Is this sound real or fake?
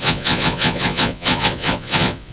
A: fake